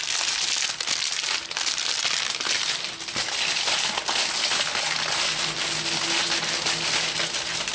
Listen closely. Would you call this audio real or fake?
real